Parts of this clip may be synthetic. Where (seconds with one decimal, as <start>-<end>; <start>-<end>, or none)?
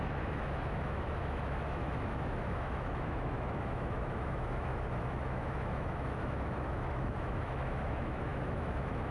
0.0-9.1